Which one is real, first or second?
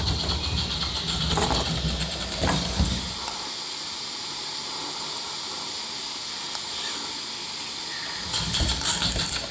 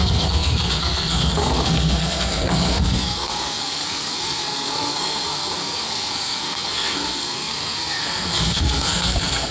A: first